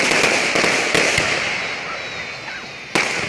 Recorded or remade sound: recorded